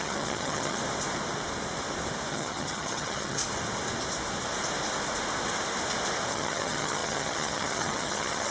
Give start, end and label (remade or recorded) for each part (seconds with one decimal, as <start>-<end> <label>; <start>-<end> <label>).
0.0-0.8 remade; 0.8-2.3 recorded; 2.3-3.4 remade; 3.4-6.3 recorded; 6.3-8.5 remade